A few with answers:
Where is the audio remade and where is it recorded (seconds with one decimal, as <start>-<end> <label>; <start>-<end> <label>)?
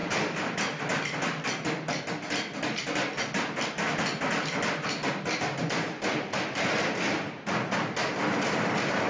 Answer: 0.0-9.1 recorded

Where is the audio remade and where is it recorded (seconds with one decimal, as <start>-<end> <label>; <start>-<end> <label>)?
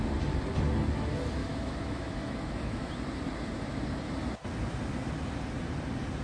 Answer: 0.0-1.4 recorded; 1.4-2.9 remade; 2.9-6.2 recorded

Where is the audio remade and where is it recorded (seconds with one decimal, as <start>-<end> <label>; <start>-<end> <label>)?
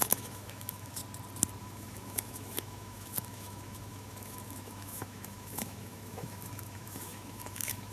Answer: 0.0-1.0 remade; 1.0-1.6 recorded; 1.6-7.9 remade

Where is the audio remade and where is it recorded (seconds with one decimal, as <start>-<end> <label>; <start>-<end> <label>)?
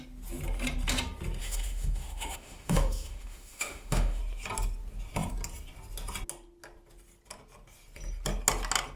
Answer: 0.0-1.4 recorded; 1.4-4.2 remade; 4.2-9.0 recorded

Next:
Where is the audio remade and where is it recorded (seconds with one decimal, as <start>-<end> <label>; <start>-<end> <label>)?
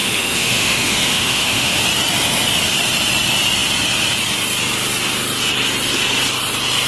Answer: 0.0-1.8 remade; 1.8-6.9 recorded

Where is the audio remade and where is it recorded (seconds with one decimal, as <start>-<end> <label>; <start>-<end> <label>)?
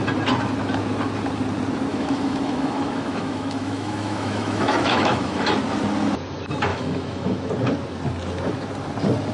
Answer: 0.0-1.9 recorded; 1.9-5.5 remade; 5.5-6.7 recorded; 6.7-7.5 remade; 7.5-9.3 recorded